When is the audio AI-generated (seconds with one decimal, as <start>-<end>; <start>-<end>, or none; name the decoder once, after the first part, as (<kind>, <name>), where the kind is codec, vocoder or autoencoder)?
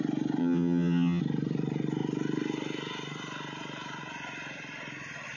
0.4-1.2 (vocoder, HiFi-GAN)